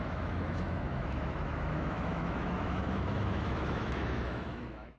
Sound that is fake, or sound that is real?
fake